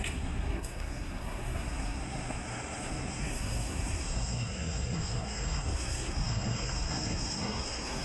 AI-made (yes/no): yes